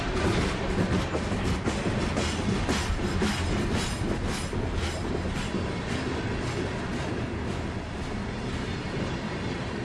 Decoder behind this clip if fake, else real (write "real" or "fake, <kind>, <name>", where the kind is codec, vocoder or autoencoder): real